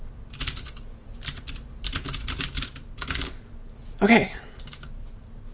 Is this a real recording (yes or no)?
yes